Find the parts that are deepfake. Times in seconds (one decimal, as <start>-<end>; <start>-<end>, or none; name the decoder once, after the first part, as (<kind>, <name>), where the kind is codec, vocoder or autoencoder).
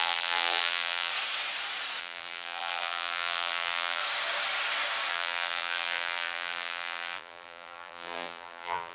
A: 0.0-1.1 (vocoder, BigVGAN v2); 2.0-4.0; 5.1-8.9